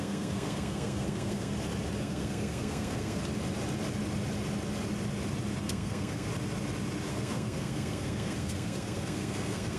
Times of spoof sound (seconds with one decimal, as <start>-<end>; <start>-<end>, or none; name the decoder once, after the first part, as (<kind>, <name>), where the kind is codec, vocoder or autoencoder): 0.0-1.5 (codec, SNAC); 2.0-3.2; 5.6-6.3; 7.1-9.8